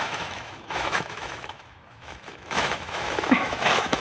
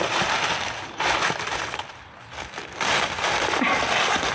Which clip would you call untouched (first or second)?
second